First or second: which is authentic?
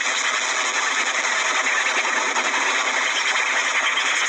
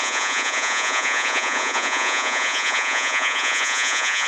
first